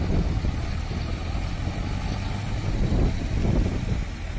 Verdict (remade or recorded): recorded